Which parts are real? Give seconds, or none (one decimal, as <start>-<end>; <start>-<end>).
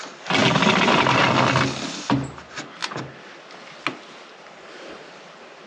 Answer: 0.0-5.7